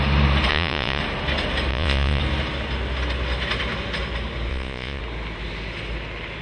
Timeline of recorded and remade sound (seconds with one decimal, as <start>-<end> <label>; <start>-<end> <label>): 0.0-0.5 recorded; 0.5-1.0 remade; 1.0-1.7 recorded; 1.7-2.2 remade; 2.2-4.5 recorded; 4.5-5.0 remade; 5.0-6.4 recorded